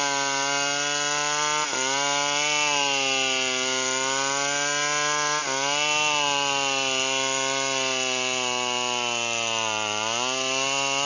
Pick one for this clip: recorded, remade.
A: recorded